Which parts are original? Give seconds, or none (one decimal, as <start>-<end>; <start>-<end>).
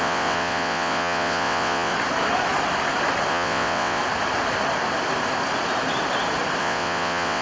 1.9-3.3; 4.0-6.6